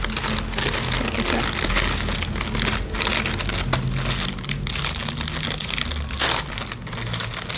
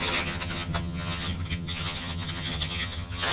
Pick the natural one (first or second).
first